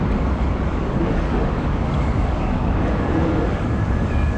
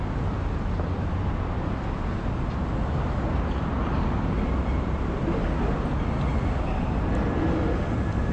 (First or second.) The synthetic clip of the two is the first